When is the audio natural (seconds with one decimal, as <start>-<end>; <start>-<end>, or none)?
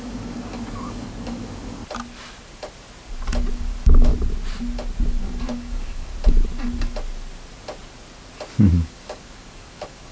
1.8-3.5; 4.1-5.4; 6.1-8.5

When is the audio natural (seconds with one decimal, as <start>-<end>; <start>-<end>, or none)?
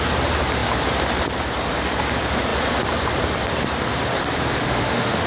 0.0-4.6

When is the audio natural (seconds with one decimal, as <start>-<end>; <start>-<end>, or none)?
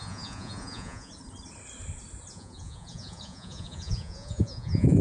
1.1-2.3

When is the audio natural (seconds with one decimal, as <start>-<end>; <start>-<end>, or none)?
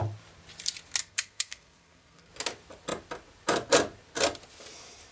0.0-1.0; 2.3-5.1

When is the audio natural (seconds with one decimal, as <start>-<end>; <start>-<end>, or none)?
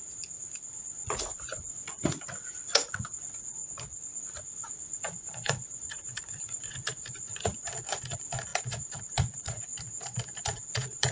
3.6-4.2; 9.7-10.4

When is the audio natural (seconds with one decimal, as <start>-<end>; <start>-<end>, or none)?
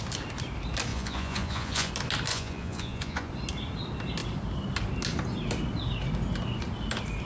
0.0-0.9; 1.9-2.3; 3.3-7.3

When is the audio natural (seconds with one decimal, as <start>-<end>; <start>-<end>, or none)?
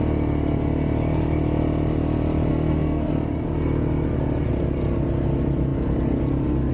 0.0-2.5; 3.1-6.7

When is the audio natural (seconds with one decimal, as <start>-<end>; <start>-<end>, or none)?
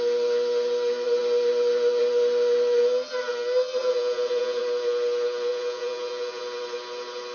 0.0-3.8; 4.6-5.5; 6.4-7.3